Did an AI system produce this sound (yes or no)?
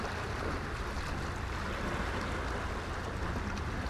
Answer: no